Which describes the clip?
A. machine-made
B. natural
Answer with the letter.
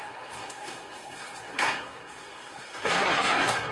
A